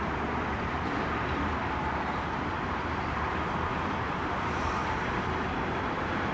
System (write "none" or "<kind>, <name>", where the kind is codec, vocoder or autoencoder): vocoder, BigVGAN v2